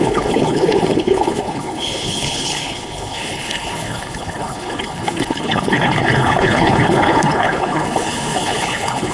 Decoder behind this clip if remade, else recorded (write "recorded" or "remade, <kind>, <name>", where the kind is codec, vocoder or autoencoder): remade, codec, HILCodec